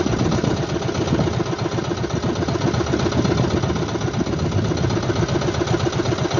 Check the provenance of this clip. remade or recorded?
recorded